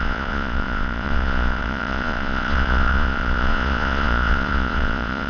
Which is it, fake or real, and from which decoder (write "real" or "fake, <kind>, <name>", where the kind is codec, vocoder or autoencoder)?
fake, vocoder, Vocos